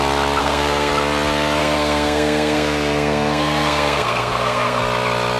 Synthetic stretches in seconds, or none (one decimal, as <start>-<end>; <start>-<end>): 0.4-0.9; 1.6-4.8